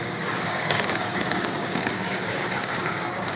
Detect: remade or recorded remade